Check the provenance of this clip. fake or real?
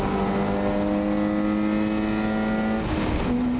real